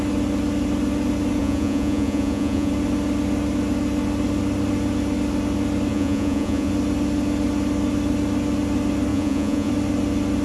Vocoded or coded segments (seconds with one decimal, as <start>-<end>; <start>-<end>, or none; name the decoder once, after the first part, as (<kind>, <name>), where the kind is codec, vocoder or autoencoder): 1.4-2.7 (vocoder, Vocos); 5.9-6.7; 9.1-9.7